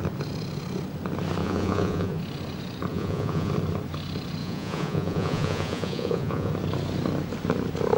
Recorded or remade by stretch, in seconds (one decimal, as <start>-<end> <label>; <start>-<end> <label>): 0.0-1.4 recorded; 1.4-2.2 remade; 2.2-2.9 recorded; 2.9-3.5 remade; 3.5-4.4 recorded; 4.4-6.5 remade; 6.5-8.0 recorded